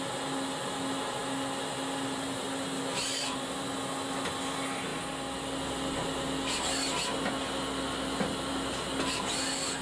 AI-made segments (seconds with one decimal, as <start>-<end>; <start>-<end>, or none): none